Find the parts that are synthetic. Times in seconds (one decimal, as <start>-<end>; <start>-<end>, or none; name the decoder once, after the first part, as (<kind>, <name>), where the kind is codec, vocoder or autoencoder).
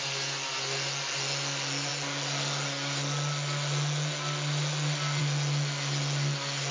none